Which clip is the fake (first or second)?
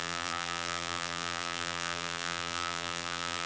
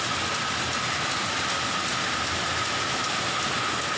first